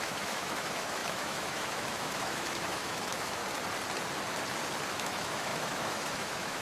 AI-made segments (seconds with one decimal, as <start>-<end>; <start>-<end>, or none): 0.0-3.4; 4.9-6.6